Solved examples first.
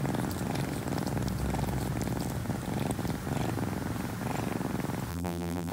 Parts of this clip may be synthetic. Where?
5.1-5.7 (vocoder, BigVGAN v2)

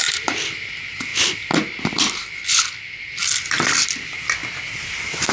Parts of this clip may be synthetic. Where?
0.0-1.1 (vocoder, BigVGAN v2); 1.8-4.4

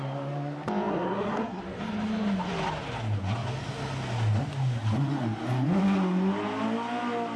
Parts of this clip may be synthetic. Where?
0.9-1.6 (codec, SNAC)

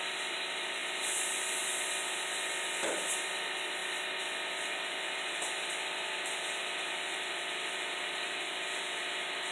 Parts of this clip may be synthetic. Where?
0.8-1.6 (vocoder, BigVGAN v2); 3.8-9.0

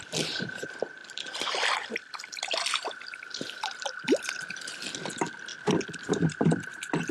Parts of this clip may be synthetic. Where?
0.0-7.1 (vocoder, BigVGAN v2)

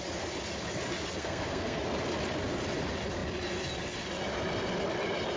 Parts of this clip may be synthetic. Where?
1.2-1.8 (codec, SNAC)